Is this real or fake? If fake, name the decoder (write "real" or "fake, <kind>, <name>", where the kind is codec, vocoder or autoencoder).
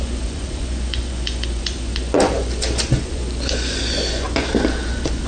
fake, vocoder, Vocos